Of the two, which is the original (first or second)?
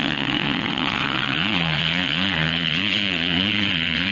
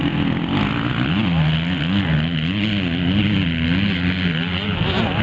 second